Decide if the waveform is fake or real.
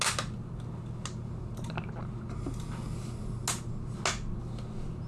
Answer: real